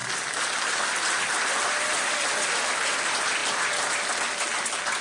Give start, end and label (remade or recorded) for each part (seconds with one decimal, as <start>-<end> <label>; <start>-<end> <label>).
0.0-5.0 recorded